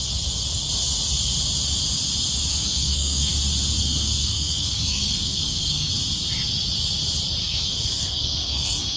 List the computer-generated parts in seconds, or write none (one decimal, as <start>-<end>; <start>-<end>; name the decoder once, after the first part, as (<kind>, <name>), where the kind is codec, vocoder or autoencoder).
2.5-3.3 (codec, SNAC); 3.8-5.9; 7.4-9.0